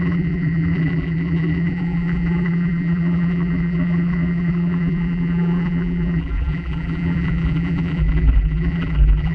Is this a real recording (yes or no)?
no